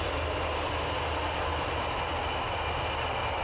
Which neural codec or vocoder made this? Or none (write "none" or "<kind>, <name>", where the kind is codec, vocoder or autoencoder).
none